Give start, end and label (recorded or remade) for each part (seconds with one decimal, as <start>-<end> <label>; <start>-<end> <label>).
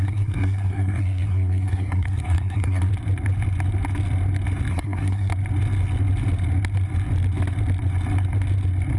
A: 0.0-2.9 remade; 2.9-4.7 recorded; 4.7-5.3 remade; 5.3-9.0 recorded